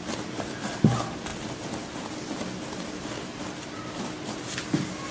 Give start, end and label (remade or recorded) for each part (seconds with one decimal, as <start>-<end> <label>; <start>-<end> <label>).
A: 0.0-5.1 recorded